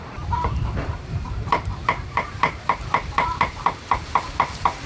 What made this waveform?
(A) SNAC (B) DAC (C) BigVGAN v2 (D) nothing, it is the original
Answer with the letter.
C